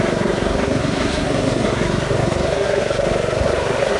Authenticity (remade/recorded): remade